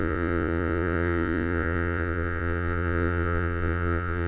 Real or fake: fake